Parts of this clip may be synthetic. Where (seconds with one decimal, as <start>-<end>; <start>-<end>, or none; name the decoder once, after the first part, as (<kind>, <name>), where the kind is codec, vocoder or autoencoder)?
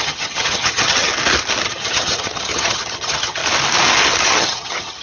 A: 0.0-1.1 (vocoder, HiFi-GAN); 1.7-3.4; 4.2-5.0